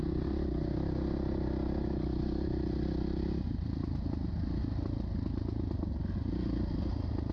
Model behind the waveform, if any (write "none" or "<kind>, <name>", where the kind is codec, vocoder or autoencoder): none